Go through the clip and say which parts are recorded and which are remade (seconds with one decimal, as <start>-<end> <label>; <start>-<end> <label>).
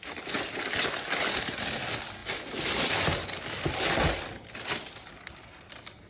0.0-6.1 recorded